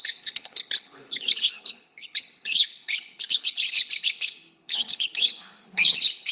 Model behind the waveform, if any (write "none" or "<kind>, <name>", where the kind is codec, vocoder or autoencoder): codec, HILCodec